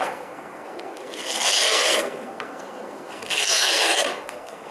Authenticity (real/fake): fake